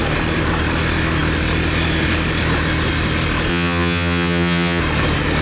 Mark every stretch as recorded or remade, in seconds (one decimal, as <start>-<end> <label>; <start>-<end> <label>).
0.0-3.5 recorded; 3.5-4.8 remade; 4.8-5.4 recorded